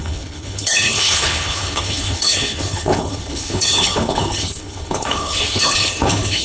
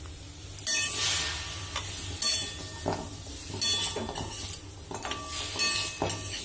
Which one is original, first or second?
second